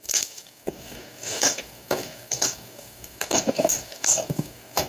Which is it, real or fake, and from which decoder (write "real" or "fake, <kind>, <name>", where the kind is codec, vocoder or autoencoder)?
fake, codec, DAC